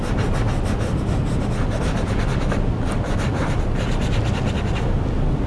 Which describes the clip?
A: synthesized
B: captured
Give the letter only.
B